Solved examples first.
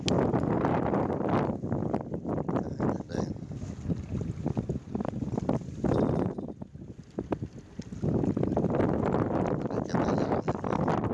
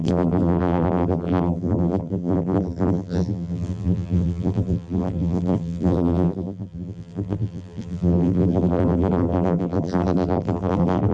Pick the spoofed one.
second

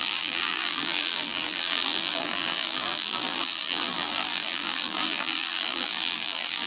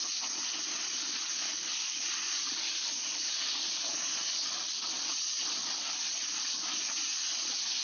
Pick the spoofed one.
first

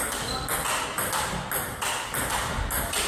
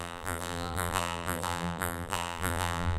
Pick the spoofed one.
second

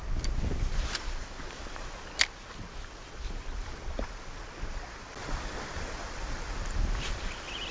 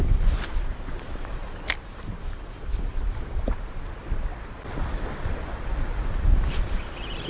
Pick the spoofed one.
second